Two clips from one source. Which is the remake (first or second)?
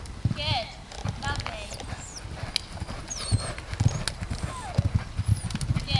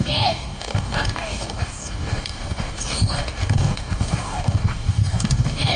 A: second